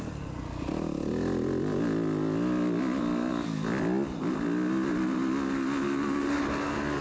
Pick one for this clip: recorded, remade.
recorded